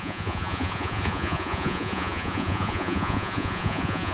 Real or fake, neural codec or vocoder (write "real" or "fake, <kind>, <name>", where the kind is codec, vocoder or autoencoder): fake, vocoder, Vocos